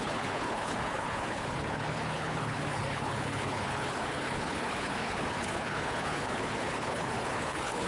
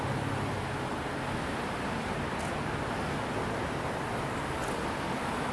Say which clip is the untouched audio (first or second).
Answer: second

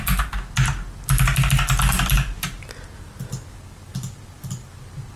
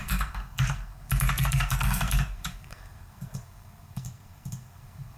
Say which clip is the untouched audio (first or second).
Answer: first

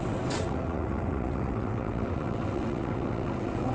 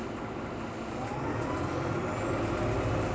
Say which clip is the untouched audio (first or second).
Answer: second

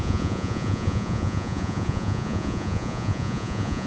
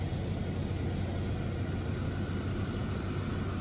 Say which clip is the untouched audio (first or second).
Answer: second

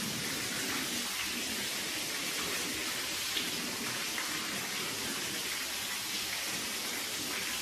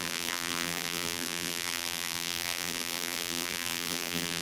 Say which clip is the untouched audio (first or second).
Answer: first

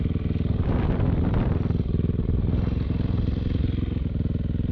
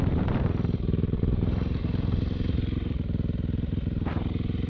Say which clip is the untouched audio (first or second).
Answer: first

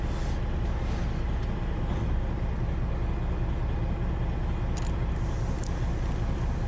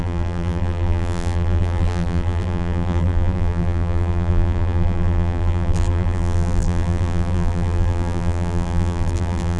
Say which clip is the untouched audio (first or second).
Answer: first